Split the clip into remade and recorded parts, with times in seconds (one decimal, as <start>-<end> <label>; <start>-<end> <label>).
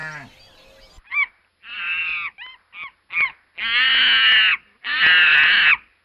0.0-6.0 recorded